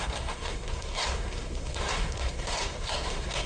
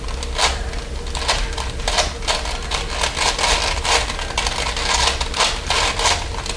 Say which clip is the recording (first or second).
second